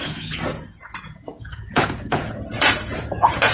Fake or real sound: fake